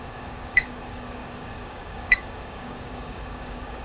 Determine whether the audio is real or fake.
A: fake